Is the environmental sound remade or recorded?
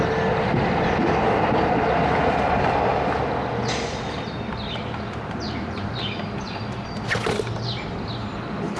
recorded